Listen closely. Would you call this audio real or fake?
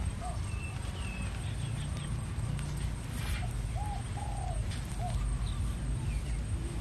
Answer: real